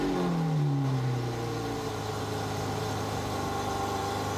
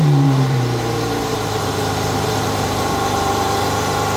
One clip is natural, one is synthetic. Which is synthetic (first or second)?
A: second